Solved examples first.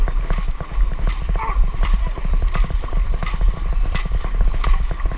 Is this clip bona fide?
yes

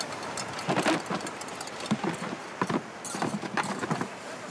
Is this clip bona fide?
yes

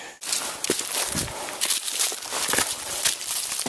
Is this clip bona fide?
yes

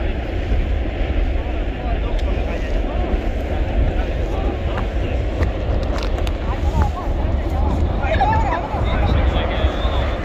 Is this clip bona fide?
yes